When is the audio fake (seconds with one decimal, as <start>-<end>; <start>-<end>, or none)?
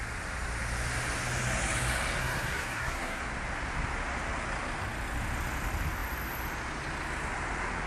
2.2-3.2